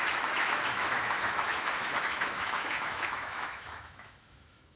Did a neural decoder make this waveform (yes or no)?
yes